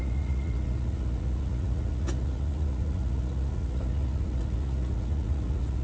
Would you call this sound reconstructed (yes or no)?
yes